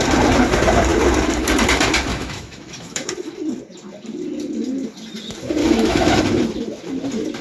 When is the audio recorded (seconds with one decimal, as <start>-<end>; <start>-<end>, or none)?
0.0-2.1; 3.1-5.6; 6.2-7.4